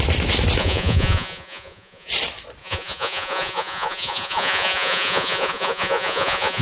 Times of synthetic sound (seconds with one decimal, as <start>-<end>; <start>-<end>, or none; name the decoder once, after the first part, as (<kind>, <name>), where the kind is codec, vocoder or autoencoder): 0.6-2.1 (vocoder, Vocos); 2.6-6.6